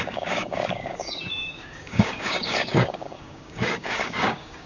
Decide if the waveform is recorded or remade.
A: remade